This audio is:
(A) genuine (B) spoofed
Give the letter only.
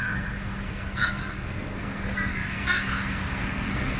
B